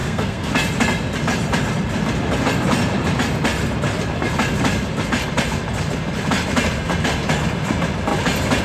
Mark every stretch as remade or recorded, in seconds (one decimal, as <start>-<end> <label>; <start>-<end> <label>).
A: 0.0-0.5 remade; 0.5-8.6 recorded